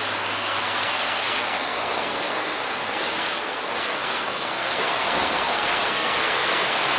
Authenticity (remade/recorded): remade